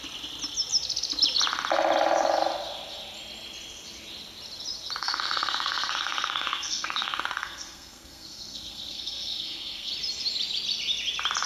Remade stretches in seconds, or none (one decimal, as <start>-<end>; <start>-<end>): 5.0-9.9

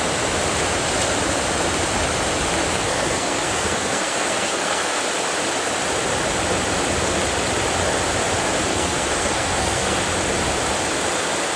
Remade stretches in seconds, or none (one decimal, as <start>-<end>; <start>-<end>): 2.7-5.0; 8.7-10.0

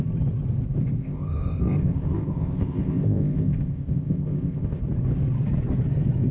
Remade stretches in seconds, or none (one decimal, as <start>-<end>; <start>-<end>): 1.0-4.8